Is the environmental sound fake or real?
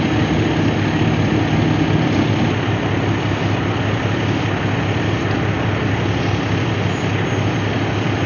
real